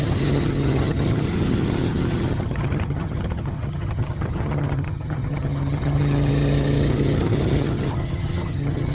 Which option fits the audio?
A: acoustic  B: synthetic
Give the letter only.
B